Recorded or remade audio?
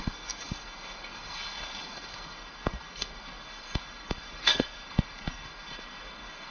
remade